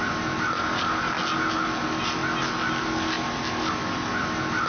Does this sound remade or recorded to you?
recorded